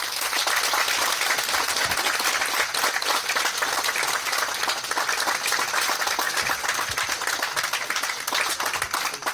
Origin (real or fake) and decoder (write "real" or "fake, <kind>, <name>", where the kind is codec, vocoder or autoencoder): real